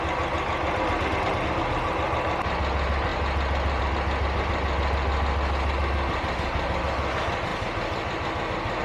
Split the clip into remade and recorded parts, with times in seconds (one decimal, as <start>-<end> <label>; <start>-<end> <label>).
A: 0.0-8.8 recorded